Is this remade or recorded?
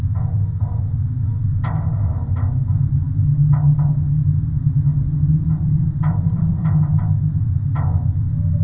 recorded